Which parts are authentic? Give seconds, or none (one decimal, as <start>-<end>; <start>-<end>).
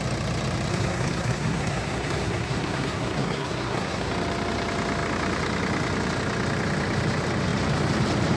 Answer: 0.0-0.7; 4.1-8.4